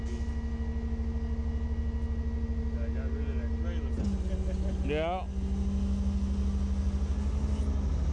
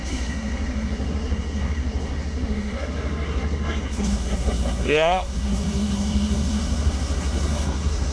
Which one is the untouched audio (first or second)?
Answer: first